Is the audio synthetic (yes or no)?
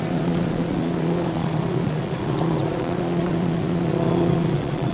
yes